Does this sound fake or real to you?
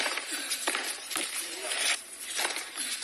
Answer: fake